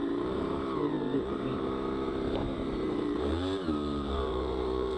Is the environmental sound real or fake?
fake